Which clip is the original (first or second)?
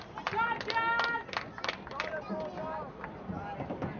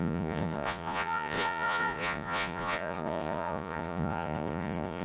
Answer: first